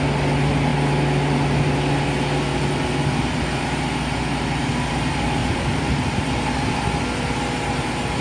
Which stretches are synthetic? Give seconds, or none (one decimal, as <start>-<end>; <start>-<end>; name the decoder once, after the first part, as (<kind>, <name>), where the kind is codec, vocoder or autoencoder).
5.4-6.4 (vocoder, BigVGAN v2)